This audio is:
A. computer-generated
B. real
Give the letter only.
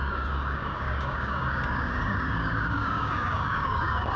A